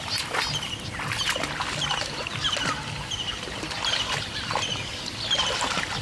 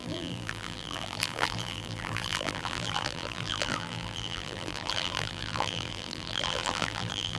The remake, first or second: second